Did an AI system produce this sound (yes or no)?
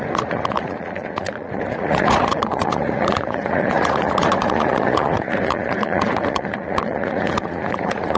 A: yes